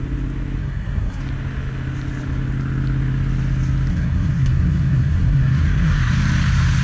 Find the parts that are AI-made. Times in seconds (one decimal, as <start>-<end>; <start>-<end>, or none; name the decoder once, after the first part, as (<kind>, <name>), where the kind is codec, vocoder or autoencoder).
0.6-1.2 (codec, SNAC); 3.9-6.1